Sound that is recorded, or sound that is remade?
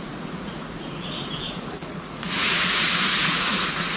remade